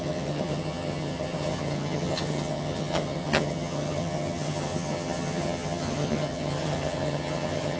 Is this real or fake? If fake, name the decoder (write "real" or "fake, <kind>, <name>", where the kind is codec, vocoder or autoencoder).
fake, vocoder, HiFi-GAN